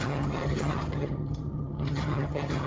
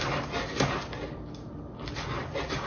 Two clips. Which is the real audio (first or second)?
second